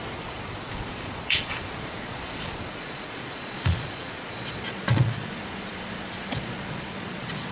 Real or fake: fake